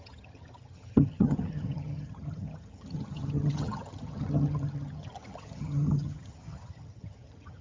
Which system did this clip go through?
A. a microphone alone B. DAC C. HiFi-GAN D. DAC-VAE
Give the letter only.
C